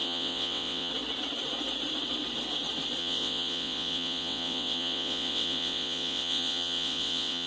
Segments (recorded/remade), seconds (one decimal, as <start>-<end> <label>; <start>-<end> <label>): 0.0-0.9 remade; 0.9-3.0 recorded; 3.0-7.5 remade